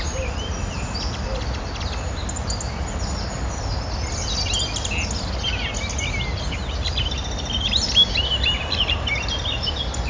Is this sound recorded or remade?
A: recorded